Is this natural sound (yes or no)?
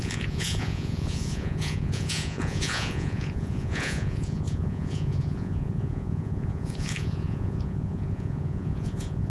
no